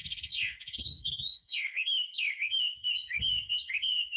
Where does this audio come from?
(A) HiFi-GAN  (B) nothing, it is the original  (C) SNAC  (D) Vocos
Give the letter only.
C